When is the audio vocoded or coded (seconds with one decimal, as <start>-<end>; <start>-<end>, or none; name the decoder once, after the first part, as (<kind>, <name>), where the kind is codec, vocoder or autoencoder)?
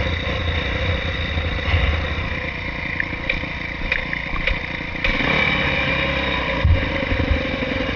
none